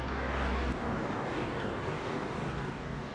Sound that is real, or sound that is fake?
fake